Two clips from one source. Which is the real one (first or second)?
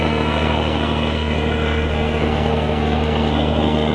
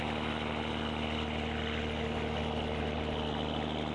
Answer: second